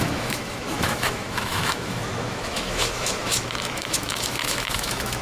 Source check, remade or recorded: remade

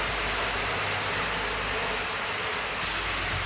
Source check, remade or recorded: recorded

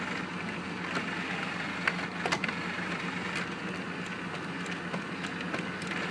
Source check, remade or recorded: recorded